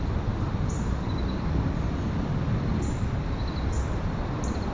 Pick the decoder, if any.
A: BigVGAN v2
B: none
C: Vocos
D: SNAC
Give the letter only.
A